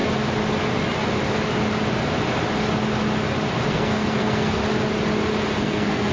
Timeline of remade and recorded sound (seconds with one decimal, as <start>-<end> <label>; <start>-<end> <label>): 0.0-3.7 recorded; 3.7-4.6 remade; 4.6-5.6 recorded; 5.6-6.1 remade